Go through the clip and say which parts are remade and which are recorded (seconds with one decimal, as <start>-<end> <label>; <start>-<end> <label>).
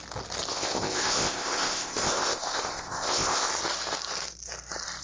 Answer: 0.0-0.5 recorded; 0.5-3.5 remade; 3.5-5.0 recorded